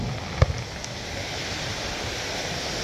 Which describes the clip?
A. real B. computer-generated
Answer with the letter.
A